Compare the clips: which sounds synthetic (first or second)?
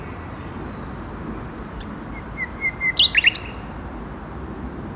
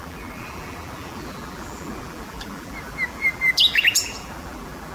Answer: second